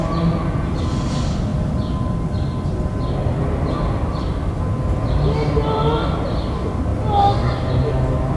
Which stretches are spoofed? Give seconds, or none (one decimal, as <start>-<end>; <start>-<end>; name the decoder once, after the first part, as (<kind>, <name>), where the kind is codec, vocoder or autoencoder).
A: none